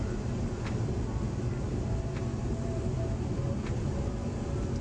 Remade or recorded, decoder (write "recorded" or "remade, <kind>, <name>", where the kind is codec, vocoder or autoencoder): recorded